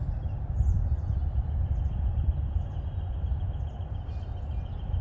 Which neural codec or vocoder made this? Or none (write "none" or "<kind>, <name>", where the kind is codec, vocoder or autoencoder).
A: none